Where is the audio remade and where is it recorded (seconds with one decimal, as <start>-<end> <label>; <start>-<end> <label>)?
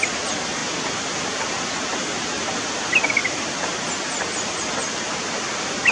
0.0-5.9 recorded